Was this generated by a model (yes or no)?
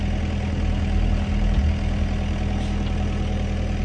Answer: no